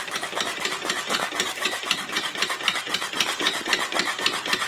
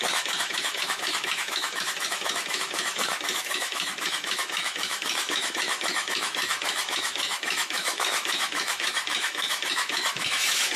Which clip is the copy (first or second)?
second